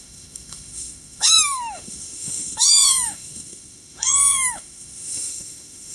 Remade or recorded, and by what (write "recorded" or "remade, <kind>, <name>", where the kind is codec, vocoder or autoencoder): remade, autoencoder, DAC-VAE